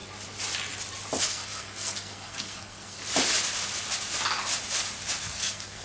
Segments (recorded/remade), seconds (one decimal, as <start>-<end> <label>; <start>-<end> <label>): 0.0-1.2 recorded; 1.2-3.0 remade; 3.0-5.2 recorded; 5.2-5.8 remade